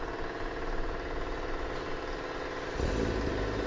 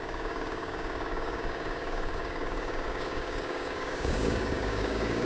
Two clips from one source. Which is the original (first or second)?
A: first